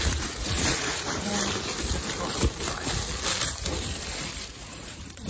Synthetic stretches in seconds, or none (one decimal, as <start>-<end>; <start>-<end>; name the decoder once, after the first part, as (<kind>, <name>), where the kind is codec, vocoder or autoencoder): 0.0-1.3 (vocoder, Vocos); 4.5-5.3